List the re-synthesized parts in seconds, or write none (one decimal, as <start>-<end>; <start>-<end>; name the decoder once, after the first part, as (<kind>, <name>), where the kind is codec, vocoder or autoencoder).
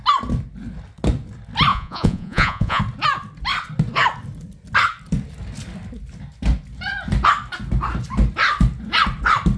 1.7-2.8 (vocoder, Vocos)